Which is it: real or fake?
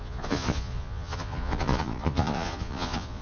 fake